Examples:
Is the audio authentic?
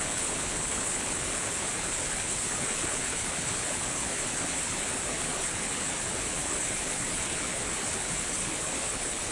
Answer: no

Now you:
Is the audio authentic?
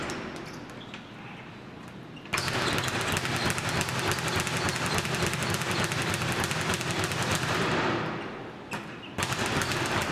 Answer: yes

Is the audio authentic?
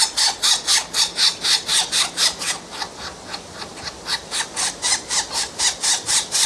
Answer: yes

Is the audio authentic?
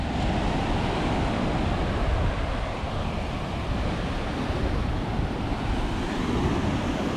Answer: yes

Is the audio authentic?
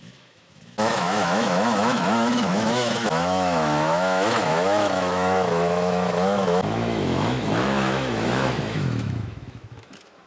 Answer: no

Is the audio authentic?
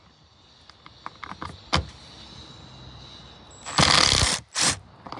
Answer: yes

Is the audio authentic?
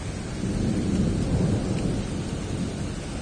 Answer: yes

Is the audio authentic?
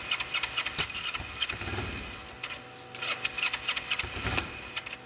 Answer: yes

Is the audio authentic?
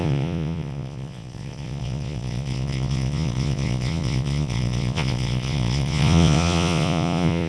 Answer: no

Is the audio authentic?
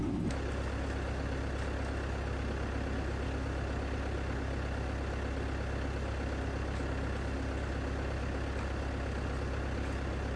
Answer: yes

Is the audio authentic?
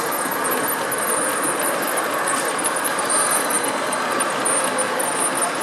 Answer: yes